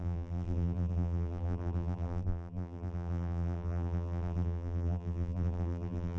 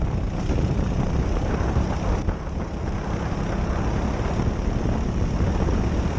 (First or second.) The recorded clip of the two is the second